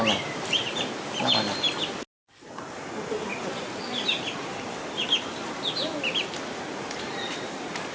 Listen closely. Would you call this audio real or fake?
real